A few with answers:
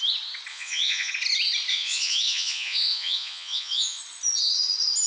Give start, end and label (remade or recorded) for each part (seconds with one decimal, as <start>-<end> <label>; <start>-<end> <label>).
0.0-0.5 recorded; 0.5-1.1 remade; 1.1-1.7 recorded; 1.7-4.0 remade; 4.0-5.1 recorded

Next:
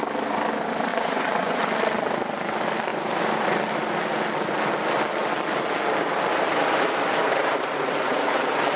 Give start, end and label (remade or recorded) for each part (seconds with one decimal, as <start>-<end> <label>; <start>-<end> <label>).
0.0-0.9 recorded; 0.9-1.6 remade; 1.6-8.8 recorded

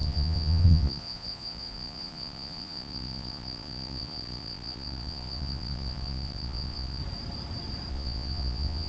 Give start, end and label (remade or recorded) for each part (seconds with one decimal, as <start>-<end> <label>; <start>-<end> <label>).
0.0-7.0 remade; 7.0-7.9 recorded; 7.9-8.9 remade